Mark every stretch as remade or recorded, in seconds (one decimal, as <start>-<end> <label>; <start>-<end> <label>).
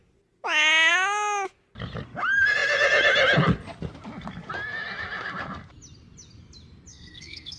0.0-6.9 recorded; 6.9-7.6 remade